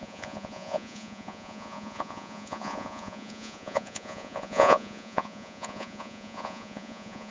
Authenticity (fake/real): fake